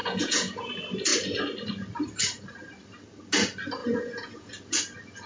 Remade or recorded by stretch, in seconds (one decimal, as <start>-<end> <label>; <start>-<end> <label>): 0.0-0.7 remade; 0.7-3.8 recorded; 3.8-4.5 remade; 4.5-5.3 recorded